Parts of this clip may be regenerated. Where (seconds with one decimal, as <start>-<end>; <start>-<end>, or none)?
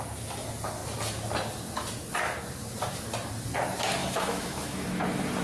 4.0-5.0